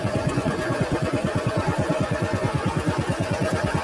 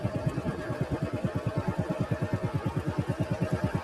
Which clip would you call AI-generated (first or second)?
first